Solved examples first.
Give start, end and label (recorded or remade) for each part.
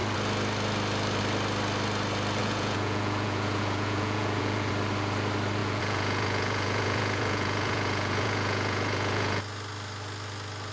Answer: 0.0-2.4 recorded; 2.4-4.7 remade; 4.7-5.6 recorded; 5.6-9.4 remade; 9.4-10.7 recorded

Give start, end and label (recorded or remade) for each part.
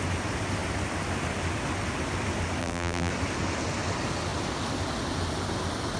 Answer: 0.0-2.6 recorded; 2.6-3.1 remade; 3.1-6.0 recorded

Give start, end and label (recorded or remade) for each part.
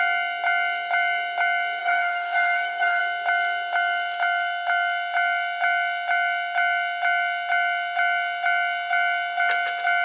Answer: 0.0-1.8 recorded; 1.8-3.0 remade; 3.0-10.0 recorded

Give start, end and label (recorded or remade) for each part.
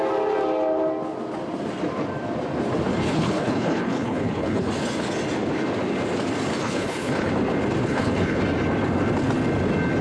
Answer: 0.0-2.9 recorded; 2.9-4.7 remade; 4.7-6.6 recorded; 6.6-7.3 remade; 7.3-7.8 recorded; 7.8-8.4 remade; 8.4-10.0 recorded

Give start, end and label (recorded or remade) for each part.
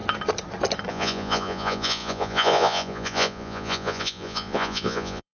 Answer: 0.0-0.9 recorded; 0.9-5.3 remade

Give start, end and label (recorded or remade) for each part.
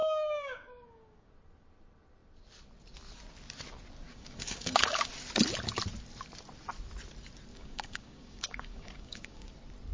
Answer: 0.0-1.3 remade; 1.3-4.1 recorded; 4.1-5.1 remade; 5.1-7.5 recorded; 7.5-9.5 remade; 9.5-9.9 recorded